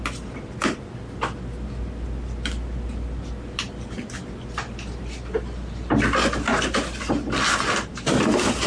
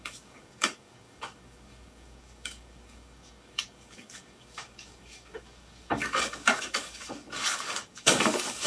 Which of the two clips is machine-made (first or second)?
second